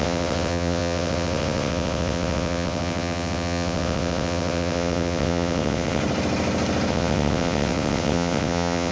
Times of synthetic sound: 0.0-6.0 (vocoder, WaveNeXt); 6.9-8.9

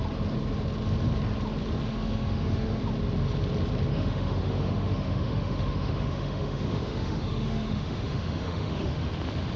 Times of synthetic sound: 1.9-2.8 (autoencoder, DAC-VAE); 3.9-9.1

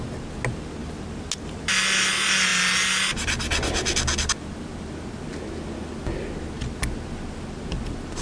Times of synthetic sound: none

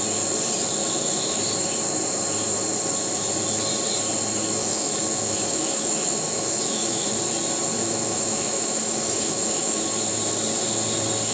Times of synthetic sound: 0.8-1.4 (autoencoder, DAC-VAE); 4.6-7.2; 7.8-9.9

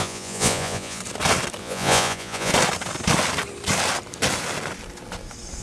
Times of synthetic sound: 0.0-1.0 (vocoder, Vocos); 1.6-2.5